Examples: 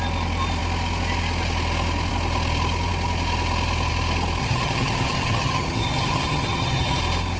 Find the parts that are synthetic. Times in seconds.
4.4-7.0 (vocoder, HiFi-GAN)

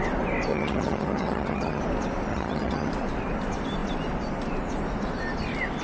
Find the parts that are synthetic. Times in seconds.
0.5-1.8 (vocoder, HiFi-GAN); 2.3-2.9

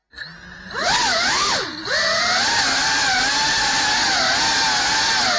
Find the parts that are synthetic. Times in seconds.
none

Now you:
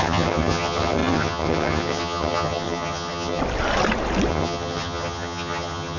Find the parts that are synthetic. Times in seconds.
0.0-3.4 (vocoder, HiFi-GAN); 4.3-6.0